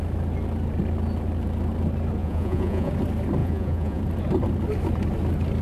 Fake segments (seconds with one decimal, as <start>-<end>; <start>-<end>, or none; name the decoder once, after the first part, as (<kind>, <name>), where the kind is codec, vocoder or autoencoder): 2.2-2.9 (vocoder, Vocos); 3.4-4.0